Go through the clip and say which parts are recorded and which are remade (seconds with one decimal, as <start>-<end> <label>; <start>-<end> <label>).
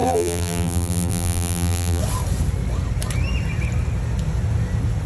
0.0-2.0 remade; 2.0-5.1 recorded